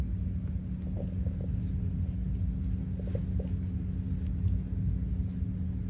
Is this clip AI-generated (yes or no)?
no